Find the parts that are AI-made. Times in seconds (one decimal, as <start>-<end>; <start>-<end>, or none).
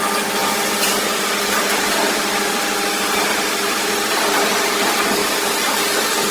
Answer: 0.0-5.2; 5.8-6.3